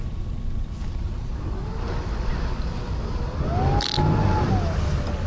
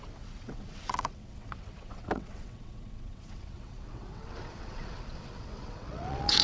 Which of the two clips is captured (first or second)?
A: first